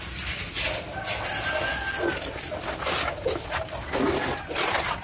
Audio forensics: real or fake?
real